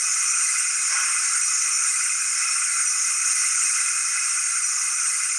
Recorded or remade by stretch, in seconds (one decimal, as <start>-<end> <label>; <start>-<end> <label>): 0.0-5.4 recorded